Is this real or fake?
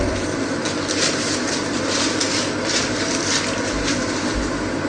real